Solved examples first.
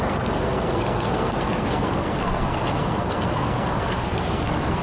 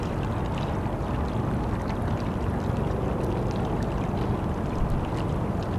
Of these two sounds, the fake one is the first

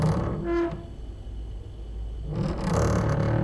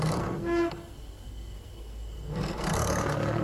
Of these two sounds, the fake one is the second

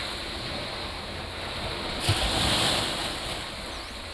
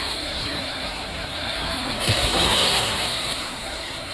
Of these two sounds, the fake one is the second